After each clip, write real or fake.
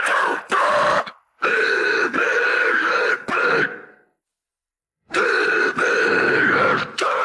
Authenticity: real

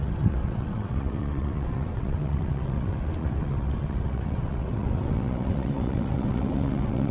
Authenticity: fake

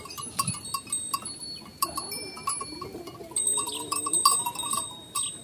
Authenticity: fake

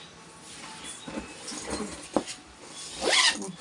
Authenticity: real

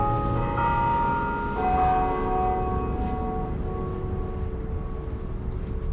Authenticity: real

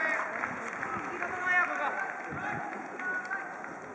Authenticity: real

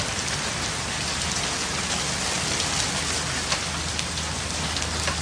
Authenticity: real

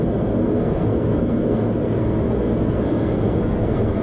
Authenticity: fake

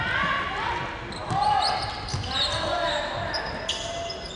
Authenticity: real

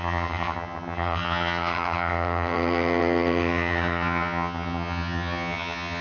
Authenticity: fake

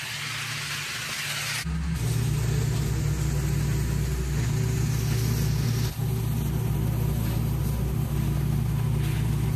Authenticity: real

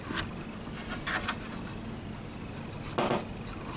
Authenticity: real